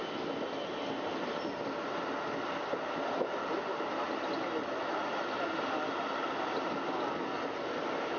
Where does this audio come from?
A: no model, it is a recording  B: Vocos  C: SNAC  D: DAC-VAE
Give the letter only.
A